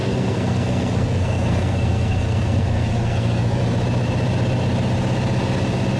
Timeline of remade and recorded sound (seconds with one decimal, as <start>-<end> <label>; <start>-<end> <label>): 0.0-3.6 remade; 3.6-6.0 recorded